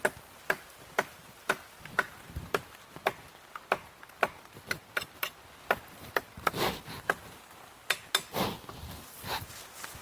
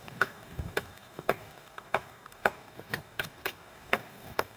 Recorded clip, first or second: first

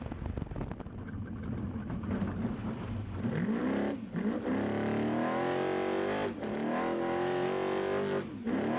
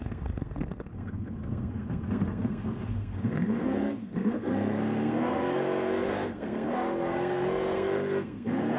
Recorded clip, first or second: first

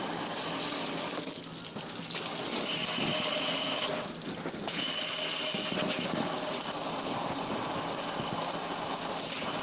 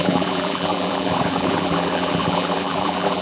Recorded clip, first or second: first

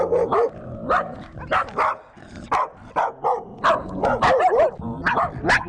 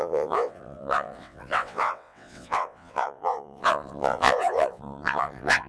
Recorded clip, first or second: first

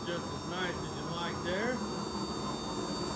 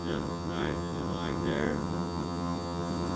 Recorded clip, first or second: first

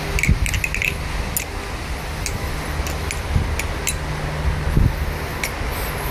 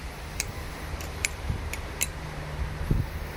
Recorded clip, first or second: first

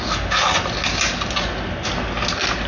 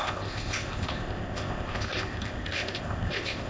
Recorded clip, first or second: first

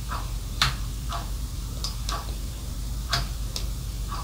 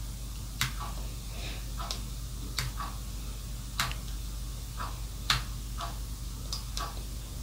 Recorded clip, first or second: second